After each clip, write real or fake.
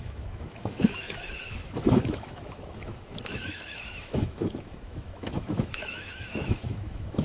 fake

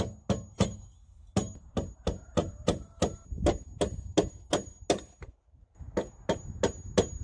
real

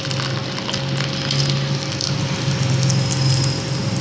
real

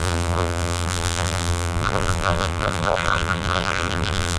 fake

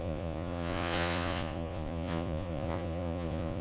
fake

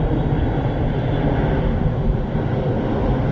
real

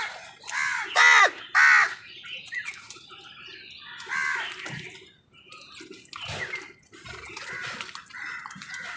real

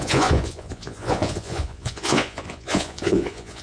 fake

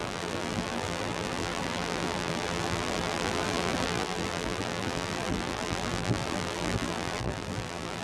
fake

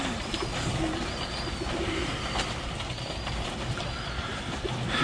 real